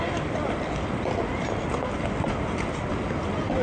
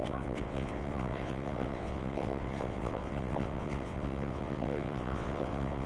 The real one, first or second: first